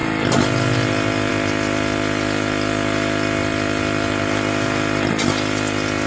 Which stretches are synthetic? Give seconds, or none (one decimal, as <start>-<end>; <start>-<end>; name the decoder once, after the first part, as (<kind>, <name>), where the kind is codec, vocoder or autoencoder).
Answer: none